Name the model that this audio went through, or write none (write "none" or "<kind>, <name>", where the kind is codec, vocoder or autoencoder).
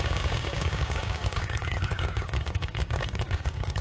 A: codec, DAC